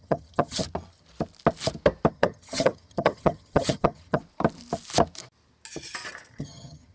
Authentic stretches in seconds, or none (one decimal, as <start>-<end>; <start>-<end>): 0.6-2.1; 4.2-6.3